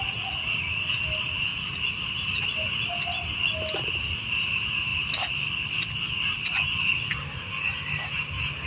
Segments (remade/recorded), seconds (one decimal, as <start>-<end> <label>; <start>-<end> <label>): 0.0-1.5 recorded; 1.5-2.5 remade; 2.5-4.9 recorded; 4.9-5.5 remade; 5.5-8.7 recorded